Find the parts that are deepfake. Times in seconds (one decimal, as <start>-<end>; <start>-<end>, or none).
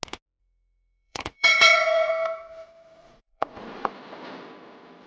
0.4-2.1; 3.0-3.9